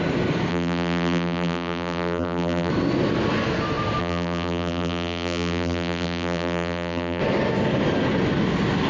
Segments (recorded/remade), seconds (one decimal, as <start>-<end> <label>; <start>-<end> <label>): 0.0-0.5 recorded; 0.5-2.7 remade; 2.7-4.0 recorded; 4.0-7.2 remade; 7.2-8.9 recorded